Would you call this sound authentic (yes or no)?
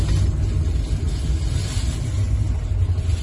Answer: yes